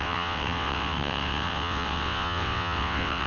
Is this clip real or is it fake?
fake